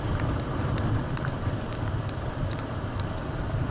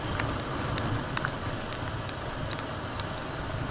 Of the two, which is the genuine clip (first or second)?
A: second